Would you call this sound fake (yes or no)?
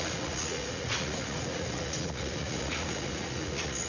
yes